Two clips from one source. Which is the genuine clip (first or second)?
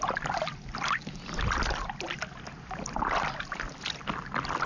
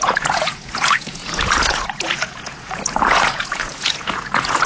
first